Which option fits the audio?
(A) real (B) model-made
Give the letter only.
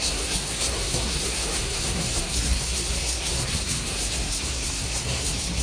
B